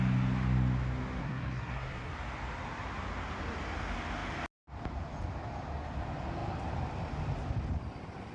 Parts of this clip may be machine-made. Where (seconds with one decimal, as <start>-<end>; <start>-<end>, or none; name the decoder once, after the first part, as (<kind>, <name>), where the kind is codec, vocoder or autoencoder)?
1.2-2.1 (codec, SNAC)